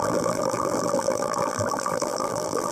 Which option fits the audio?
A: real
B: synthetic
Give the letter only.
B